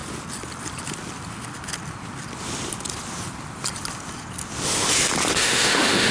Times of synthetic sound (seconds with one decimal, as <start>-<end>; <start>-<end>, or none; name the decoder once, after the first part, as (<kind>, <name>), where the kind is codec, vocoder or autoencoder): 5.4-6.1 (autoencoder, DAC-VAE)